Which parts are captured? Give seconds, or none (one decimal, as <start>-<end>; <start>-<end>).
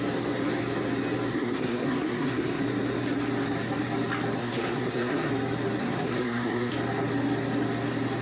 0.0-1.3; 2.6-4.4; 5.3-5.8; 6.7-8.2